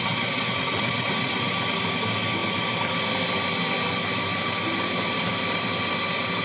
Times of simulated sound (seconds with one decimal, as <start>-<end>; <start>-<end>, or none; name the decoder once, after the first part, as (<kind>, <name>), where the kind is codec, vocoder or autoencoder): 0.0-1.5 (vocoder, WaveNeXt)